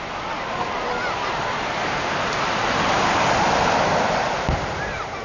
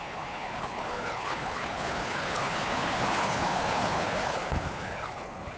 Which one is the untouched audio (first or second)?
first